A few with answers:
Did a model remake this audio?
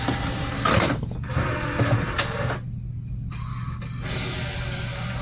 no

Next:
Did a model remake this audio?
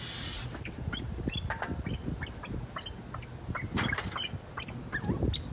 no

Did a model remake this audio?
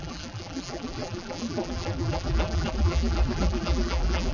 yes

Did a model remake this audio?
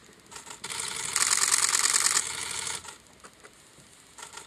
no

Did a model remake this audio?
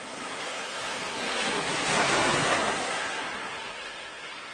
yes